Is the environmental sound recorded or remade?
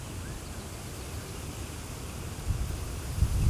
recorded